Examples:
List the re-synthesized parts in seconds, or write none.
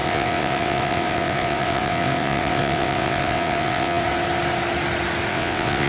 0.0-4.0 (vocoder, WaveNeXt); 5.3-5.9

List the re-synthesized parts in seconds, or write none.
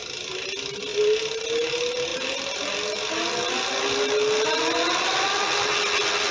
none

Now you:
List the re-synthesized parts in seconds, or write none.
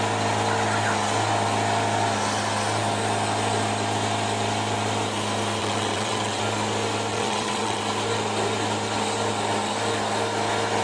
5.6-6.4 (vocoder, WaveNeXt); 7.1-7.8